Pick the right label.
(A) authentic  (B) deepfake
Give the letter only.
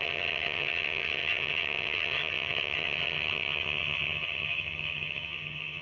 B